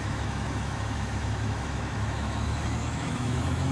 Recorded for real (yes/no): no